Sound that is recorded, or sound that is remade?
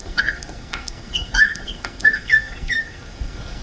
remade